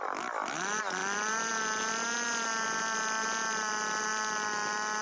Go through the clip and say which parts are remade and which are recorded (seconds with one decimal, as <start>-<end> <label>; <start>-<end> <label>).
0.0-5.0 recorded